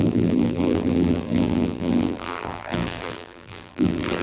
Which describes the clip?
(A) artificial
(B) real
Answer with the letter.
A